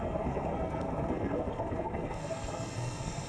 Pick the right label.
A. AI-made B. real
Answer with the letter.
A